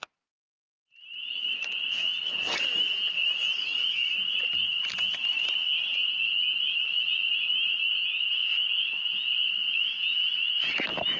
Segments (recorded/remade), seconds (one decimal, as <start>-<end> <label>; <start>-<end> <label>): 0.0-11.2 recorded